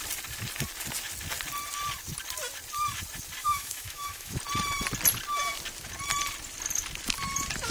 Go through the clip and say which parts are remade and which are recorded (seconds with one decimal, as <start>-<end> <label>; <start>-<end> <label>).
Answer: 0.0-3.4 recorded; 3.4-4.4 remade; 4.4-7.7 recorded